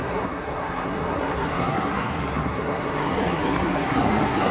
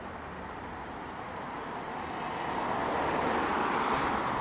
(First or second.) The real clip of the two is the second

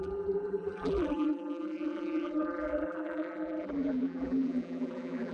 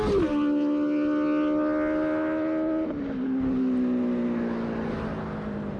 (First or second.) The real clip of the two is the second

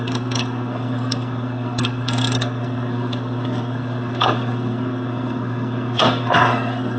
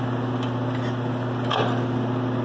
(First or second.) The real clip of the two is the second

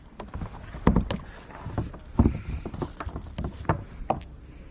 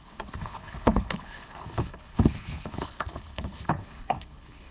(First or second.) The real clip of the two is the first